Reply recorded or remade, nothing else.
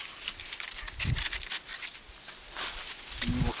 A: recorded